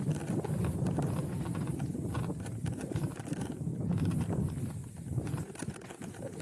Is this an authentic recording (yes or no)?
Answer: yes